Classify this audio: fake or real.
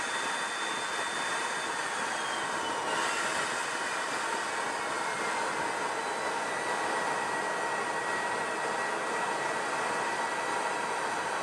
real